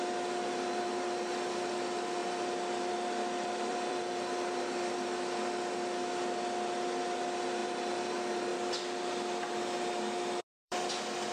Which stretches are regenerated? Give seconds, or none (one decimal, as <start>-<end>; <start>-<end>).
0.0-8.5; 9.6-11.3